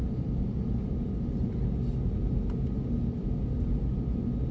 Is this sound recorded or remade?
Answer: recorded